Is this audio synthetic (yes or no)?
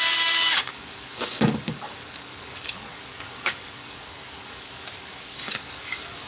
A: yes